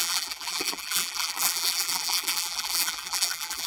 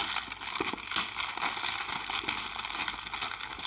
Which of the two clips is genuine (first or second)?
second